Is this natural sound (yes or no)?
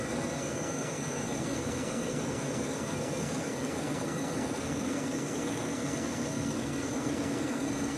no